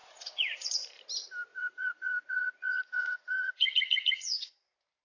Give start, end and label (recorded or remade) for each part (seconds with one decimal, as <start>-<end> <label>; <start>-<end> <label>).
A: 0.0-1.0 remade; 1.0-1.5 recorded; 1.5-4.5 remade; 4.5-5.0 recorded